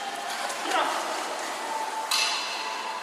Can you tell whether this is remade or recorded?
recorded